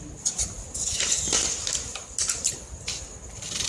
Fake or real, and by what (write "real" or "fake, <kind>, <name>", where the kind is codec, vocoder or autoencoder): real